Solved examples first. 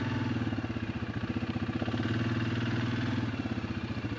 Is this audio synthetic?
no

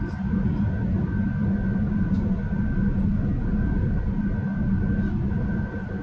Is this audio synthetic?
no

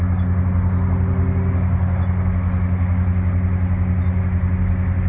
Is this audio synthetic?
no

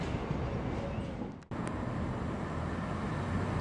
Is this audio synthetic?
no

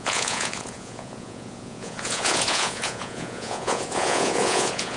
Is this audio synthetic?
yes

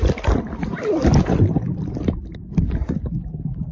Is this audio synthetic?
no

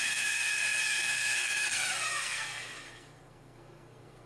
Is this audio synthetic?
yes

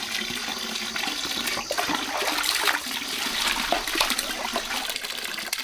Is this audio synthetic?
no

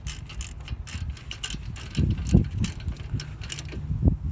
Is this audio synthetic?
no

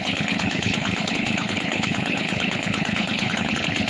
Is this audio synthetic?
yes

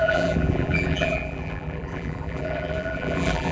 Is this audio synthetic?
yes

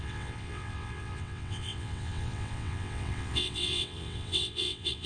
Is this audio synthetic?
yes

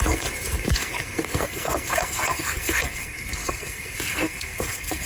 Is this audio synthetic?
yes